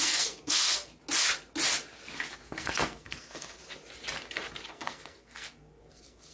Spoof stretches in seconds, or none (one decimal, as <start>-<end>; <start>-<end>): 0.0-0.9; 2.3-3.6; 4.7-6.3